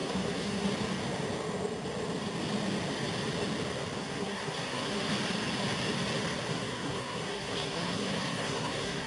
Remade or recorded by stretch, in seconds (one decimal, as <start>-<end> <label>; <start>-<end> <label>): 0.0-0.7 remade; 0.7-4.0 recorded; 4.0-5.1 remade; 5.1-6.5 recorded; 6.5-9.1 remade